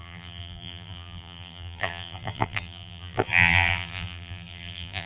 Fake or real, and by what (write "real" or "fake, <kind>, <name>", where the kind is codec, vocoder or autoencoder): fake, vocoder, BigVGAN v2